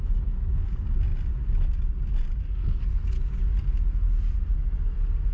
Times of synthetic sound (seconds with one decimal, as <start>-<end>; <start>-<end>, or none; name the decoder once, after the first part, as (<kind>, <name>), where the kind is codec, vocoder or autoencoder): none